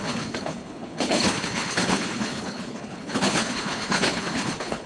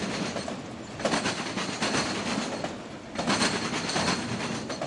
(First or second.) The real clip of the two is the second